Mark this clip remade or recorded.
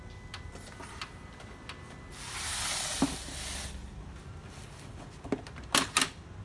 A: recorded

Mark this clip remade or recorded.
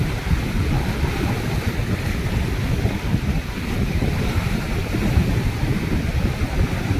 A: remade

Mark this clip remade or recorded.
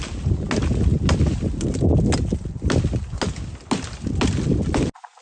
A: recorded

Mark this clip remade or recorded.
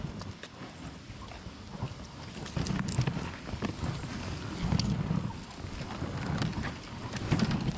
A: recorded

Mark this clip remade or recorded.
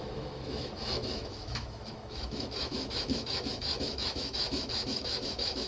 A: remade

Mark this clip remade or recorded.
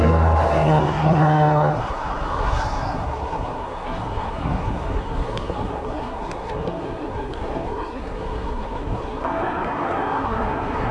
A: remade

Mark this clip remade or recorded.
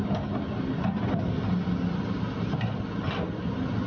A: recorded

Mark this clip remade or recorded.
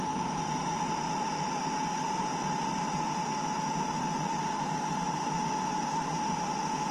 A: recorded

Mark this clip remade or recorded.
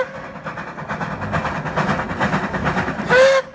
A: recorded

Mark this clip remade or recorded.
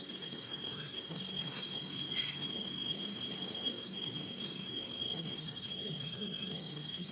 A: remade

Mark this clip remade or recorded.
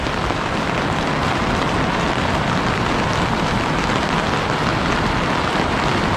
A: recorded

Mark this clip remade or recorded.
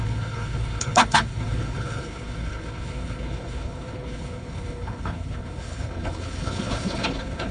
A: remade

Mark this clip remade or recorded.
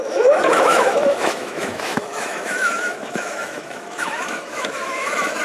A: remade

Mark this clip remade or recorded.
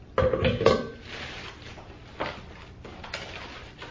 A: recorded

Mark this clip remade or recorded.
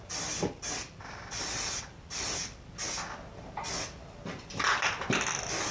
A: recorded